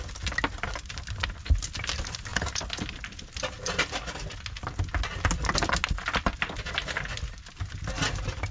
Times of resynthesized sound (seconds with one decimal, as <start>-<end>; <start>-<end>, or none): none